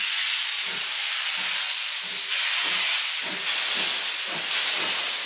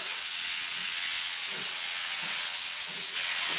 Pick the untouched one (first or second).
first